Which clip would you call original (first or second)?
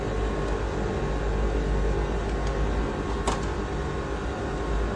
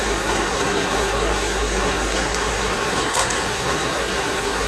first